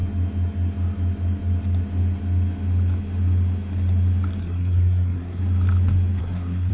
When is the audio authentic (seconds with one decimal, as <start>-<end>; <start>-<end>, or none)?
0.0-4.4; 5.4-6.2